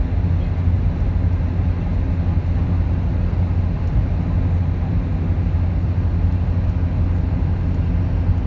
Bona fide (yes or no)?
yes